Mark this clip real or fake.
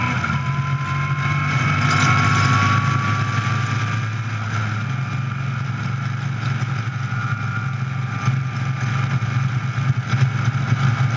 real